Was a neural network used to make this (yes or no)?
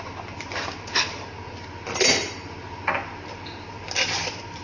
no